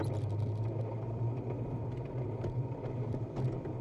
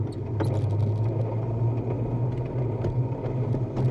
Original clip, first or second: second